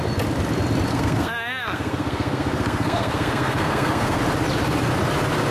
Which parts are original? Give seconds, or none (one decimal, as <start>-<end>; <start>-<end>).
0.0-0.9; 4.2-5.5